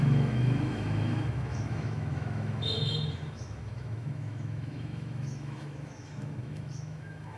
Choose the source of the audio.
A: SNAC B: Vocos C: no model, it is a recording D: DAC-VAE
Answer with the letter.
D